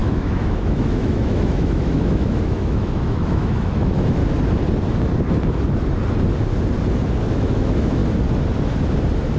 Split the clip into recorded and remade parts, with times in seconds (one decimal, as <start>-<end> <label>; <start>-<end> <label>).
0.0-4.2 remade; 4.2-7.3 recorded; 7.3-8.0 remade; 8.0-9.4 recorded